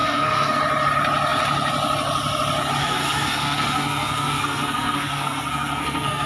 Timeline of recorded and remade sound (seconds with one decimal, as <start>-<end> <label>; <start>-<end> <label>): 0.0-0.6 remade; 0.6-2.8 recorded; 2.8-6.3 remade